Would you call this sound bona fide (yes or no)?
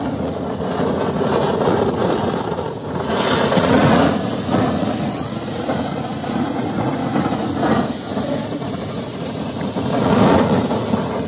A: no